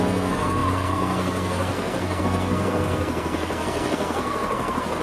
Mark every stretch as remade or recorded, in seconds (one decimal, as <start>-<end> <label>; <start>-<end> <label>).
0.0-5.0 remade